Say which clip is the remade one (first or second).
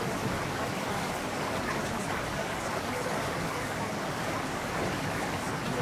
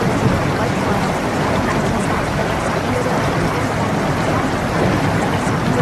first